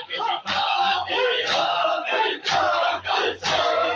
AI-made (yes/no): yes